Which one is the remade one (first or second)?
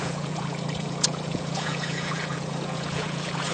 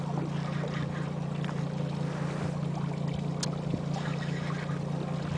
first